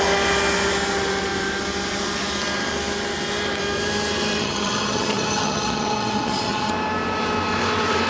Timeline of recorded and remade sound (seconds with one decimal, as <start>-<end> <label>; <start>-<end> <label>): 0.0-4.4 recorded; 4.4-6.7 remade; 6.7-8.1 recorded